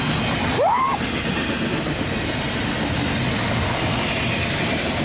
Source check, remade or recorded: recorded